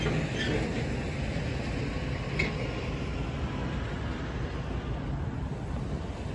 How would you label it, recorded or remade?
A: recorded